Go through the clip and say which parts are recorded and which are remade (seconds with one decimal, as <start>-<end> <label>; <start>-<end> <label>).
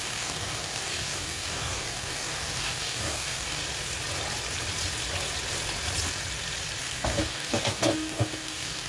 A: 0.0-3.6 remade; 3.6-6.8 recorded; 6.8-8.9 remade